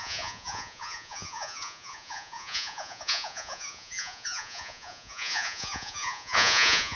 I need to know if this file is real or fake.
fake